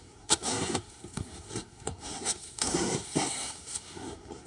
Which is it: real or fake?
fake